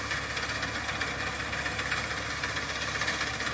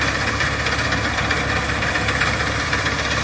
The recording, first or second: first